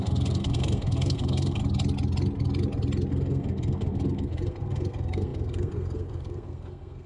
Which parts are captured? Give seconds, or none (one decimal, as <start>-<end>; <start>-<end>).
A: 1.6-3.1

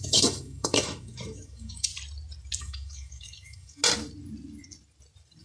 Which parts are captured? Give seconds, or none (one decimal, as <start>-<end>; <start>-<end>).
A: 1.9-2.6; 3.8-5.4

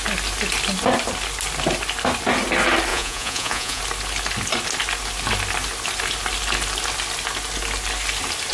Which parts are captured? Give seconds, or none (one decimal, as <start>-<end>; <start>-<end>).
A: 0.0-2.9; 3.8-8.5

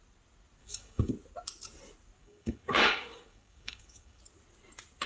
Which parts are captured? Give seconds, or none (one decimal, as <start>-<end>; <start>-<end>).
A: 0.0-0.6; 1.1-2.2; 4.2-5.1

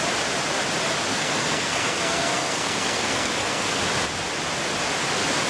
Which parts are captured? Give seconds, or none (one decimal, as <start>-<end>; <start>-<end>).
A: 0.0-1.1; 3.8-5.5